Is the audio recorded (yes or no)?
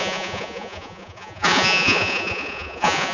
no